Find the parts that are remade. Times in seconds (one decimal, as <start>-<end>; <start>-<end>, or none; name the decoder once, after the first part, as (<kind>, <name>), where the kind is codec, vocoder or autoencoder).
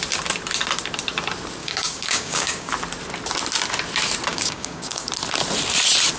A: 1.6-2.7 (codec, DAC); 4.3-5.1